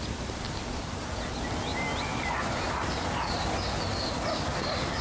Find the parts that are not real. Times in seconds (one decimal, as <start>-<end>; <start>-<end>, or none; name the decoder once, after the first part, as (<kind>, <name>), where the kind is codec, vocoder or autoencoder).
none